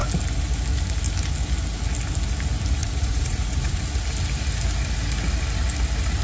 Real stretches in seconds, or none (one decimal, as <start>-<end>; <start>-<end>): 0.0-2.8; 3.8-6.2